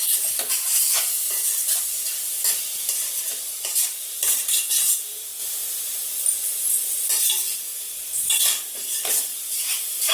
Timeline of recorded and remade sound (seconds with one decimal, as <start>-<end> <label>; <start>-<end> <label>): 0.0-3.7 recorded; 3.7-4.7 remade; 4.7-7.5 recorded; 7.5-10.1 remade